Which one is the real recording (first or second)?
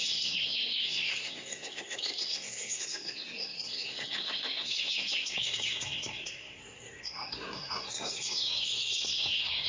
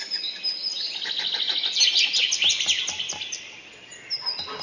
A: second